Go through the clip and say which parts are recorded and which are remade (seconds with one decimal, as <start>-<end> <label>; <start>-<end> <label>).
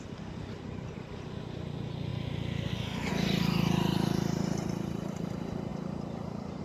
0.0-6.6 recorded